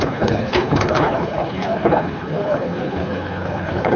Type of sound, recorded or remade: remade